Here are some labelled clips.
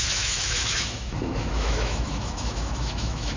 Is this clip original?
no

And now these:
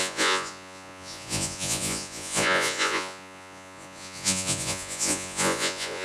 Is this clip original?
no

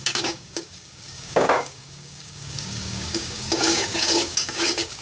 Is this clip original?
no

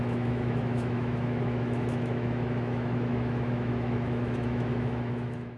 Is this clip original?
no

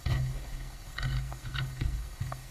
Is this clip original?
no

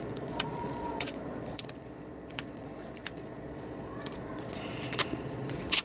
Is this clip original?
no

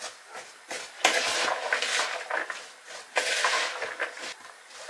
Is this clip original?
yes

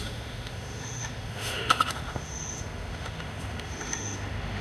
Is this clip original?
no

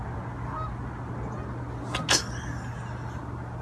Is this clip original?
yes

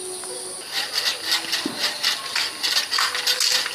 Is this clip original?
yes